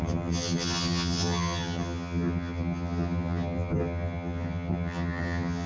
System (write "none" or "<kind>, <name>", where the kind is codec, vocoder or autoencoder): vocoder, HiFi-GAN